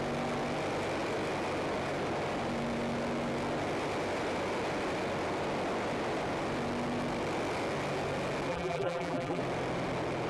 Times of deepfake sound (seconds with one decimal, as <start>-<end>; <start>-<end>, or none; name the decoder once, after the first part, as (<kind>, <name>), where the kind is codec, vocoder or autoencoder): 8.5-9.4 (vocoder, BigVGAN v2)